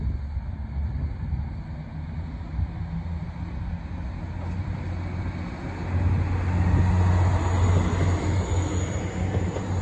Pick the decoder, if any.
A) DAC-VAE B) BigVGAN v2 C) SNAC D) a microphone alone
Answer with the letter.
D